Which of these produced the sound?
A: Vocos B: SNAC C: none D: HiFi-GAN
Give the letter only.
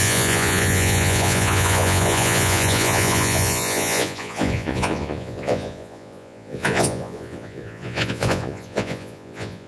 A